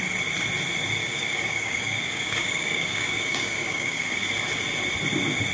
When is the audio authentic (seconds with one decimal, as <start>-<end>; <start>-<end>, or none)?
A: 0.0-1.0; 4.3-5.5